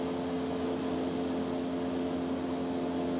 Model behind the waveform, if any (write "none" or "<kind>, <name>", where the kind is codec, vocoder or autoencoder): none